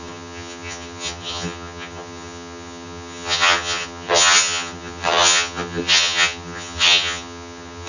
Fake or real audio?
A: fake